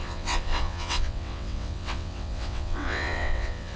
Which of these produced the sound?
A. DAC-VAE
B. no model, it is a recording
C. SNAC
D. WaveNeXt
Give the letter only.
D